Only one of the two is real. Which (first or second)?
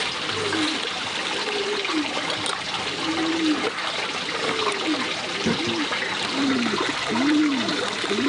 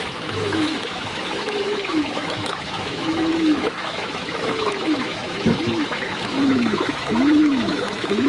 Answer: first